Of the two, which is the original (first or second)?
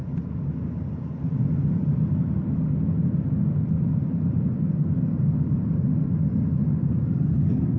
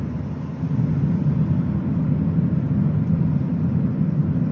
second